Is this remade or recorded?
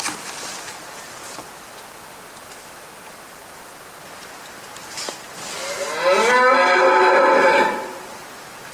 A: recorded